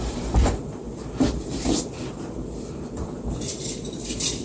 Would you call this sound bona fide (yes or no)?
no